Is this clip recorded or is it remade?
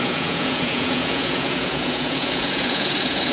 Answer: remade